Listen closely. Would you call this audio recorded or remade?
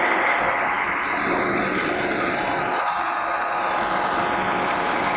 recorded